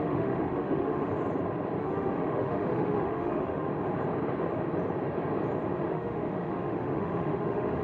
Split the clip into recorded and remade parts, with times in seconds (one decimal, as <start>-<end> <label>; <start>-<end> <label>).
0.0-1.1 remade; 1.1-1.8 recorded; 1.8-3.7 remade; 3.7-5.9 recorded; 5.9-7.8 remade